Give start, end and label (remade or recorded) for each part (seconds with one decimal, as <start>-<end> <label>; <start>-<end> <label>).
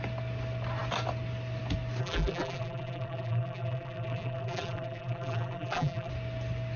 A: 0.0-2.0 recorded; 2.0-6.1 remade; 6.1-6.8 recorded